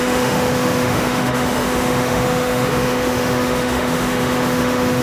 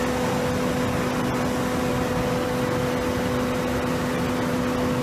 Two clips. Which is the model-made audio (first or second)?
first